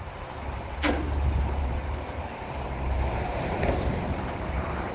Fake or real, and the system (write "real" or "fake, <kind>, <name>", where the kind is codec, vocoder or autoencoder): fake, vocoder, BigVGAN v2